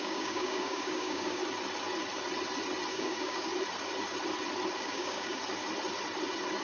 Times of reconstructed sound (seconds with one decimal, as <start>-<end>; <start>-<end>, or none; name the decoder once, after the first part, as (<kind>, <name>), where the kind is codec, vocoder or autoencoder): 0.0-1.4 (codec, DAC); 2.9-3.5; 4.8-5.4